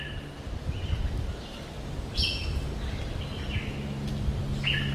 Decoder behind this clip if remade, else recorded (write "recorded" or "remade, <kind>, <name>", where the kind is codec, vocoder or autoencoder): recorded